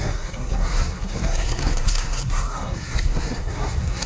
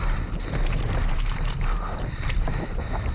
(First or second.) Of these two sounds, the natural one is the second